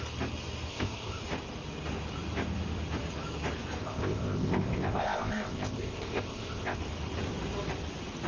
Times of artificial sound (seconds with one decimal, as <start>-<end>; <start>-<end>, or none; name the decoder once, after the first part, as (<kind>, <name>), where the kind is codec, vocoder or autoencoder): 0.7-1.2 (codec, ZipCodec); 3.8-6.8